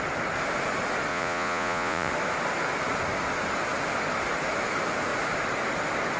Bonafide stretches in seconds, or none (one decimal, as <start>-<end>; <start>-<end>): 0.0-1.1; 2.1-6.2